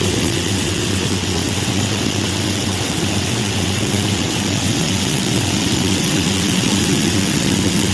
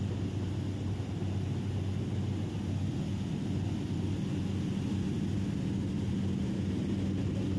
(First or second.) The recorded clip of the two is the second